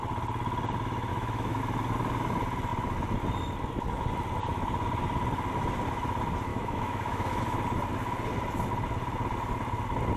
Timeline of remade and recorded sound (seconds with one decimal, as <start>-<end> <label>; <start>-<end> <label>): 0.0-1.1 recorded; 1.1-1.6 remade; 1.6-6.5 recorded; 6.5-7.4 remade; 7.4-10.2 recorded